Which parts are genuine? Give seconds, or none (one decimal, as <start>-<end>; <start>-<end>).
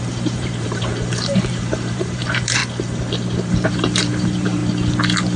2.6-3.5; 4.6-5.4